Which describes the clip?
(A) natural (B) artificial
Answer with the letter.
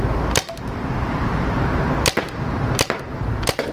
A